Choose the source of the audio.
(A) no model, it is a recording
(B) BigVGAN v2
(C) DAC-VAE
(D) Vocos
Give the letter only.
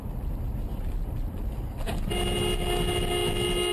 A